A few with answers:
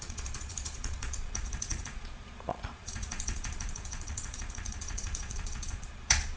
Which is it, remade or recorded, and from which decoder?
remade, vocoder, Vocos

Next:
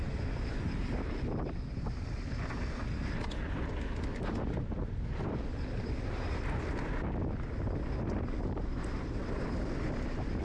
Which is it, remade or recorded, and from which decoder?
recorded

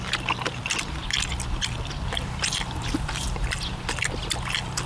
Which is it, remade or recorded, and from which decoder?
recorded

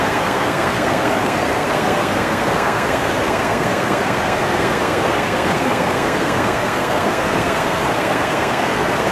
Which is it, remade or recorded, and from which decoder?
remade, codec, SNAC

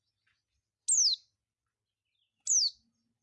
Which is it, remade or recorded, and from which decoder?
recorded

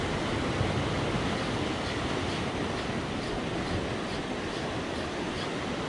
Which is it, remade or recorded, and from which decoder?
recorded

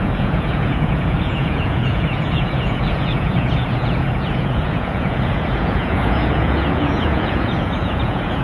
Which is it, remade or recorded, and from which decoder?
remade, vocoder, Vocos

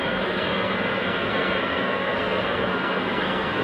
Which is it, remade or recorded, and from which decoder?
remade, codec, SNAC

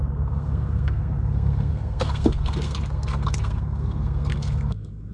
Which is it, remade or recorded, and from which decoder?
remade, codec, SNAC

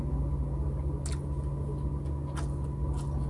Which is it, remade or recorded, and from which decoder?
recorded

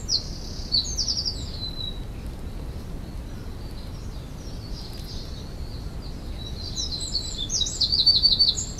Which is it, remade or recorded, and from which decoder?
recorded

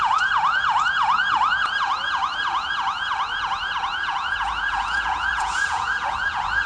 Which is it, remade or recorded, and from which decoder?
remade, vocoder, Vocos